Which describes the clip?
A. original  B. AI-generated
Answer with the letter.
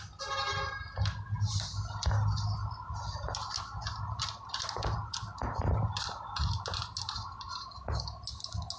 A